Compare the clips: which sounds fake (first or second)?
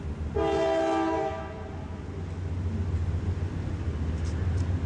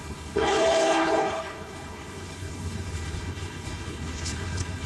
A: second